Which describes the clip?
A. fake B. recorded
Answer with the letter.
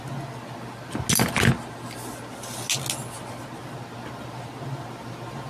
B